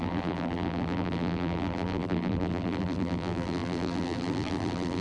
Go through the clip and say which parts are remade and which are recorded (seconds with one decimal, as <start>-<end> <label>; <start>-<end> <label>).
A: 0.0-5.0 remade